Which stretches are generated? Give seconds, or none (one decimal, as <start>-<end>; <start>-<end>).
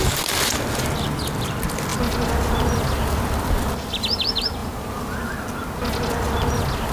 4.6-5.3